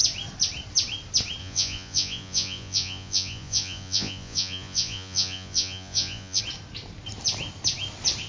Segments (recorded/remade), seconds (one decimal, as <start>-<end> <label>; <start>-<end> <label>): 0.0-1.4 recorded; 1.4-6.4 remade; 6.4-8.3 recorded